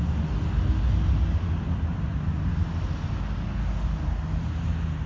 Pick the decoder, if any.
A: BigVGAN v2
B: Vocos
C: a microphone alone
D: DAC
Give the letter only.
C